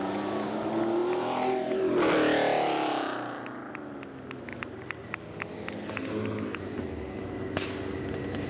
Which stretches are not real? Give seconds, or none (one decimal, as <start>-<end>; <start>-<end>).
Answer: 4.5-5.1